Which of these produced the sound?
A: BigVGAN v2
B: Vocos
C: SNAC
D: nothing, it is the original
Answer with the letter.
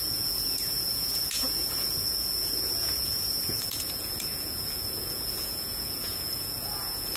B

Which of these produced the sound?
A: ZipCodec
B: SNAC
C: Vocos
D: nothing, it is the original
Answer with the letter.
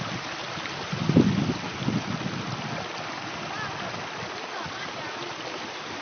D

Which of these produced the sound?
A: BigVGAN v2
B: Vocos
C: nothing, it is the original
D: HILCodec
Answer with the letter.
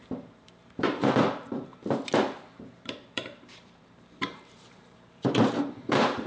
A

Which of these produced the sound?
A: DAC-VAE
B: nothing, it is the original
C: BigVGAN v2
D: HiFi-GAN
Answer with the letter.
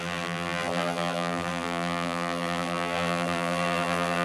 C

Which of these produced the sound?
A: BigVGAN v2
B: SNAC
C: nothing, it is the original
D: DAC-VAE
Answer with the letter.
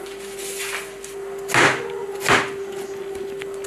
C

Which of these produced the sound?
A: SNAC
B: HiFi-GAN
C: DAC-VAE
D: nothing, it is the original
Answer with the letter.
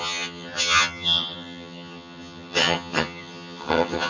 B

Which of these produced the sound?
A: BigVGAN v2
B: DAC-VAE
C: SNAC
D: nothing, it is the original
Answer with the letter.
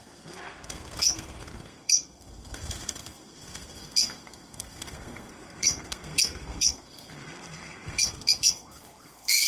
C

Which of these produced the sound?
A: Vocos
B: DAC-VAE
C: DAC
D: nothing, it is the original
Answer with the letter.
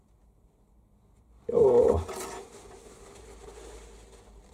D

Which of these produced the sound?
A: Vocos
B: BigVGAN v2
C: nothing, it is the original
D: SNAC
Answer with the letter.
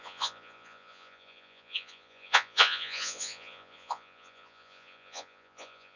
A